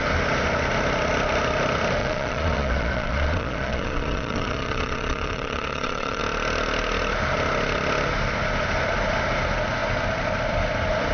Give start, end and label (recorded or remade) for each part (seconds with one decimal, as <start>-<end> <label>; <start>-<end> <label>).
0.0-2.0 recorded; 2.0-6.2 remade; 6.2-11.1 recorded